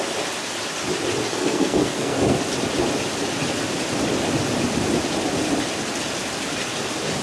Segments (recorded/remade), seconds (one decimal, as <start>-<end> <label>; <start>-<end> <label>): 0.0-1.3 recorded; 1.3-2.4 remade; 2.4-7.2 recorded